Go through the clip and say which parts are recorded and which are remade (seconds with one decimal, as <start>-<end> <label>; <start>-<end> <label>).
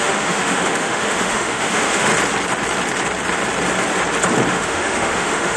0.0-2.1 remade; 2.1-4.5 recorded; 4.5-5.6 remade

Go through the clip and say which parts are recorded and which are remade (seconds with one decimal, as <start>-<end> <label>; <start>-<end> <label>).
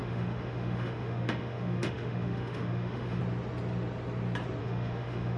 0.0-3.2 remade; 3.2-4.6 recorded; 4.6-5.4 remade